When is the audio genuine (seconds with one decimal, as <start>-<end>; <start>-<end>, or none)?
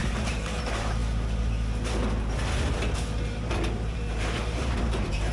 1.0-3.5